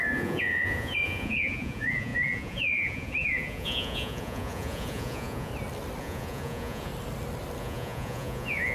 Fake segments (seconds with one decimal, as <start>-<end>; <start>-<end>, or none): 0.0-5.5; 6.0-6.9; 7.6-8.7